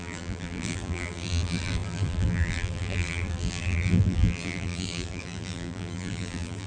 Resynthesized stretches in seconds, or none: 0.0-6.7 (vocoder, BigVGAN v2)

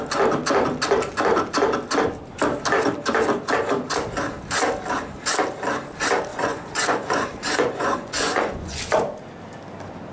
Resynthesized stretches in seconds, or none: 6.3-8.8 (vocoder, Vocos)

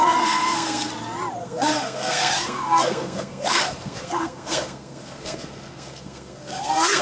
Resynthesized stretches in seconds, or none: 0.0-0.9 (codec, SNAC); 1.4-7.0

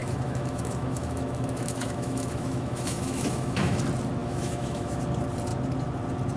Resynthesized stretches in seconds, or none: 0.0-3.8 (autoencoder, DAC-VAE); 4.2-5.0

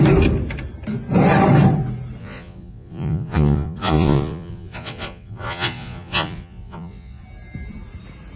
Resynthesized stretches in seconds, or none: 2.2-7.2 (vocoder, Vocos)

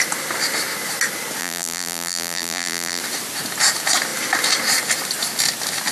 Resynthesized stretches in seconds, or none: 1.4-3.0 (vocoder, BigVGAN v2)

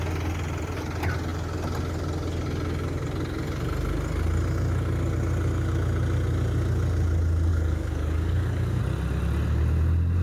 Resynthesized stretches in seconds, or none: 7.5-8.8 (codec, DAC)

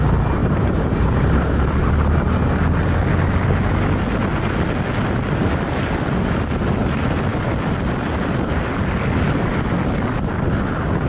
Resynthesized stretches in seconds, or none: 0.4-1.9 (vocoder, BigVGAN v2)